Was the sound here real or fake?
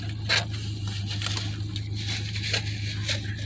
real